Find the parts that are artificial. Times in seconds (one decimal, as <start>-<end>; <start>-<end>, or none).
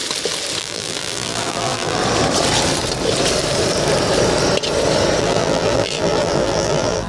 0.6-2.0; 5.2-7.1